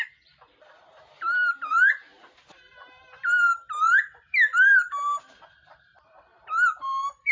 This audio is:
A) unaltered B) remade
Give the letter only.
B